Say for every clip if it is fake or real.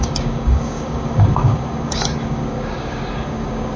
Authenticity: fake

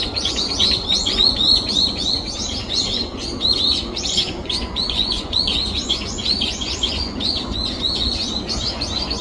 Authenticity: fake